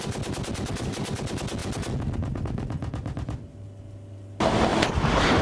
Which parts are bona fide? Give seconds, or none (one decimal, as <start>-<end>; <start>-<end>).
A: 0.0-4.7